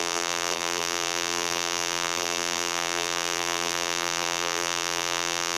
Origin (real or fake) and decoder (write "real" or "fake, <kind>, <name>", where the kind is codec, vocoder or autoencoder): fake, vocoder, BigVGAN v2